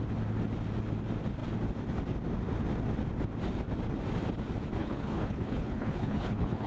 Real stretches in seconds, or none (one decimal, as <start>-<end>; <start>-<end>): 0.0-4.8